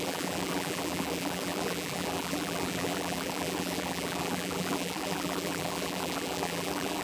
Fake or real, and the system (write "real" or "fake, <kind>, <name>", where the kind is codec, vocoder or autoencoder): fake, vocoder, BigVGAN v2